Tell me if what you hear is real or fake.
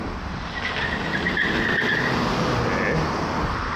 real